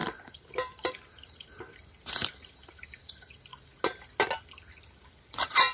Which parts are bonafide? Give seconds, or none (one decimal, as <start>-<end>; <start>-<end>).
3.5-5.3